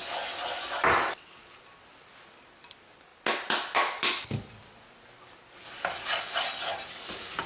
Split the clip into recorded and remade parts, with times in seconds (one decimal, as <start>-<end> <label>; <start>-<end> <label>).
0.0-7.5 recorded